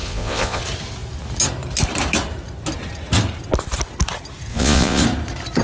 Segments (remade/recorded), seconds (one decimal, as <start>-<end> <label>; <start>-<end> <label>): 0.0-0.6 remade; 0.6-4.5 recorded; 4.5-5.0 remade; 5.0-5.6 recorded